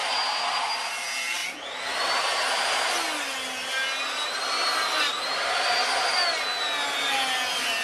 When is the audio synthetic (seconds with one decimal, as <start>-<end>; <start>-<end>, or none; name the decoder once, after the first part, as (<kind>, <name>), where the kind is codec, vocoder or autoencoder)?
none